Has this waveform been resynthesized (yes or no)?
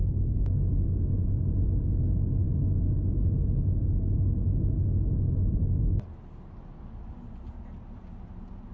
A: no